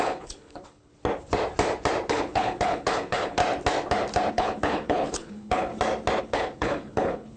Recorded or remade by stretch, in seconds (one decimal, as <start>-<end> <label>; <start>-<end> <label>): 0.0-0.9 remade; 0.9-2.1 recorded; 2.1-3.4 remade; 3.4-4.3 recorded; 4.3-5.7 remade; 5.7-6.2 recorded; 6.2-7.4 remade